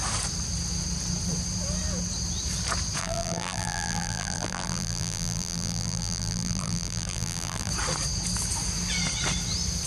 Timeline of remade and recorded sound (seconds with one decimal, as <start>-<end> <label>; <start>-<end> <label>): 0.0-3.0 recorded; 3.0-7.7 remade; 7.7-9.9 recorded